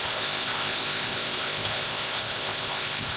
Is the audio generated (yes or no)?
yes